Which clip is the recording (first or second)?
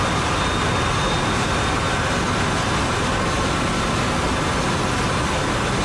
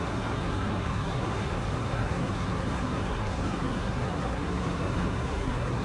first